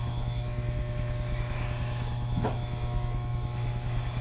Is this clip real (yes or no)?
no